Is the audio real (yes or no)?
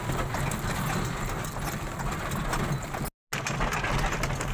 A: yes